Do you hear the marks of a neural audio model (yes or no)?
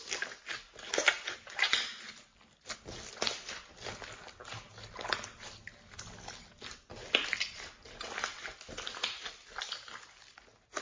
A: no